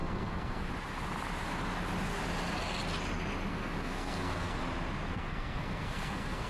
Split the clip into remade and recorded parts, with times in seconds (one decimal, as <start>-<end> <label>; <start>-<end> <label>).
0.0-0.7 remade; 0.7-3.5 recorded; 3.5-4.6 remade; 4.6-5.1 recorded; 5.1-6.5 remade